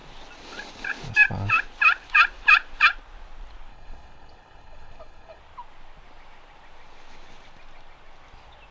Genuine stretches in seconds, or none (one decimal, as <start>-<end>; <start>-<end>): 0.0-3.7; 5.4-8.7

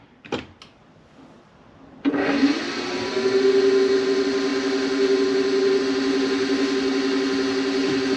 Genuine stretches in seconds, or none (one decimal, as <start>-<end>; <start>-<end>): 0.0-8.2

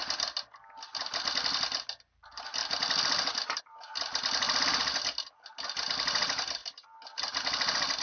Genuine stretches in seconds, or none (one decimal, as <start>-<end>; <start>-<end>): 0.0-8.0

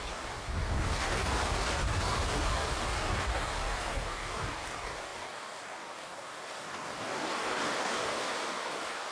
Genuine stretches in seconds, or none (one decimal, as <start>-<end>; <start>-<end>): none

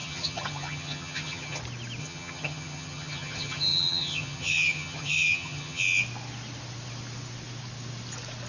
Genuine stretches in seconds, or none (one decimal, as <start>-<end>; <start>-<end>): 1.6-2.0; 5.8-8.5